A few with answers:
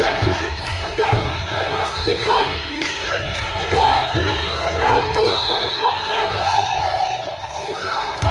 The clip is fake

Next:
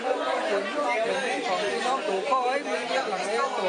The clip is real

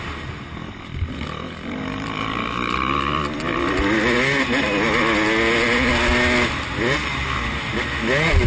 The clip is real